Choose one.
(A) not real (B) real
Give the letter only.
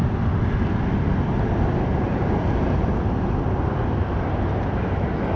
B